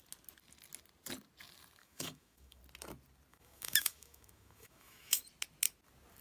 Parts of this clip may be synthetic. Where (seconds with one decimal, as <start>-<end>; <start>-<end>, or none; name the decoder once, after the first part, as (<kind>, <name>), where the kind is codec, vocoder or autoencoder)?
1.8-2.6 (autoencoder, DAC-VAE); 3.3-5.2